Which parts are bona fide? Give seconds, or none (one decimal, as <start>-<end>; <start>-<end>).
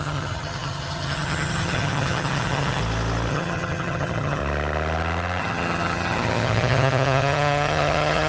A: 2.8-3.3; 4.4-5.4